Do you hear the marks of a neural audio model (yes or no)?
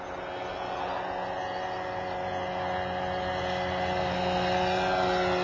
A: no